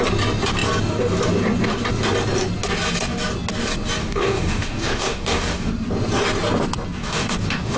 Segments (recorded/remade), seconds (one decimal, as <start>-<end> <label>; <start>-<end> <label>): 0.0-4.0 recorded; 4.0-5.7 remade; 5.7-7.0 recorded; 7.0-7.8 remade